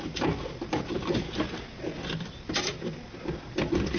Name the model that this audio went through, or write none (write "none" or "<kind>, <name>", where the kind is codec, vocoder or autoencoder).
none